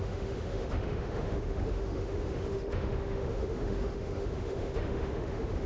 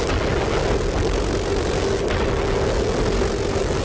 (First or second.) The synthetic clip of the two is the first